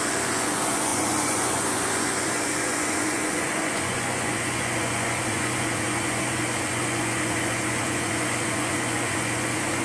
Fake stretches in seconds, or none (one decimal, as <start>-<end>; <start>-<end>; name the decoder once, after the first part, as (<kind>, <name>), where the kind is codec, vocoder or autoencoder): 0.0-9.8 (vocoder, Vocos)

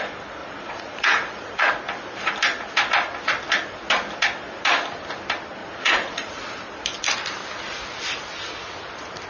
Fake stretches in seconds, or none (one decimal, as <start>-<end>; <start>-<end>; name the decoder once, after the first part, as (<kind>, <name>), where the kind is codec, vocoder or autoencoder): 0.4-1.7 (vocoder, Vocos); 5.6-6.3

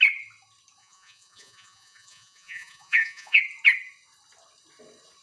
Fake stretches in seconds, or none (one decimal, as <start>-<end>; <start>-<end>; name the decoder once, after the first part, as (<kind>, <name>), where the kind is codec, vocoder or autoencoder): 0.8-3.4 (vocoder, Vocos)

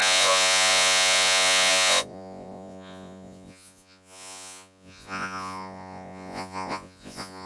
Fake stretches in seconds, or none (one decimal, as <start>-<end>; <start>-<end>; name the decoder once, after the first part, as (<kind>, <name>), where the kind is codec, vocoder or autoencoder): 0.0-7.5 (vocoder, Vocos)

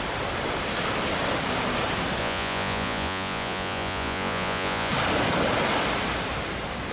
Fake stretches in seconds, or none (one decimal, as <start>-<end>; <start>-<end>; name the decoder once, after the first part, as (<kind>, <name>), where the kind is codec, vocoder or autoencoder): 2.2-4.9 (vocoder, Vocos)

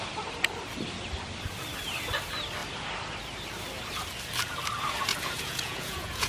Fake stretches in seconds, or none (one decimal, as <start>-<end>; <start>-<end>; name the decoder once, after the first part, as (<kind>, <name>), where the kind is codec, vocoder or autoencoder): 5.1-6.3 (vocoder, Vocos)

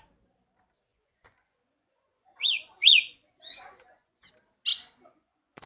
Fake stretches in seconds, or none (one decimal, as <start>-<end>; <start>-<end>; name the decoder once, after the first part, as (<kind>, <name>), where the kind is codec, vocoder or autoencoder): 0.9-4.3 (vocoder, Vocos); 4.7-5.7

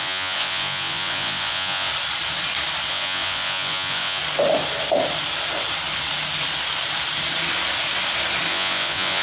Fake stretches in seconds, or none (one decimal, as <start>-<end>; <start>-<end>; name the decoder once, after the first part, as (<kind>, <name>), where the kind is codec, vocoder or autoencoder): 0.0-1.9 (vocoder, Vocos); 2.9-4.2; 8.5-9.2